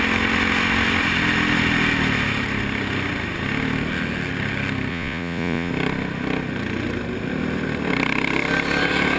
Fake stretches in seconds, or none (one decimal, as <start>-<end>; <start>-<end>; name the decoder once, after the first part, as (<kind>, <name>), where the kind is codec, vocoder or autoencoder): 4.9-5.7 (vocoder, Vocos)